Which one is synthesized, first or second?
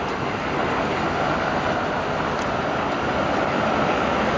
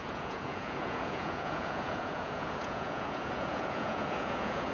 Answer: second